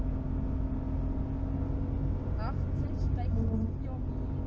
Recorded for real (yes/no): yes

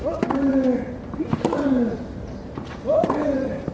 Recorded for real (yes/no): no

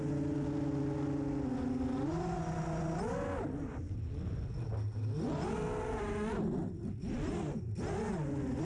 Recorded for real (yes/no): yes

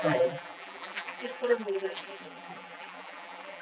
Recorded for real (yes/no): no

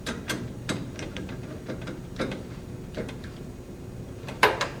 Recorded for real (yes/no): no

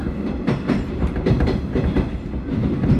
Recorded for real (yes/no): yes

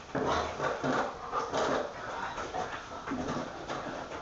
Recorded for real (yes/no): yes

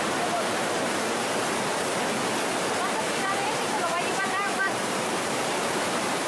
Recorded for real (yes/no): no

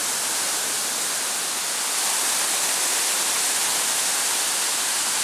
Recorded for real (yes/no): no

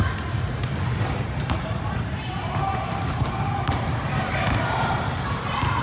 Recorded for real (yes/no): no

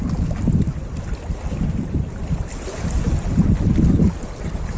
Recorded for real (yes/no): yes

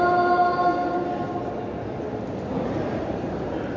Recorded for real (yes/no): yes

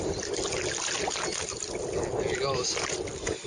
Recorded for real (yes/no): yes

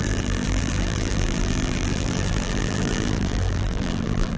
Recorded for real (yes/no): no